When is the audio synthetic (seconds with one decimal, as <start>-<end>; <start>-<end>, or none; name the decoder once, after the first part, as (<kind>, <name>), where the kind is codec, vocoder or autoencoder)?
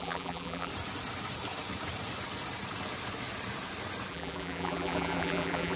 0.0-0.7 (vocoder, BigVGAN v2); 4.1-5.8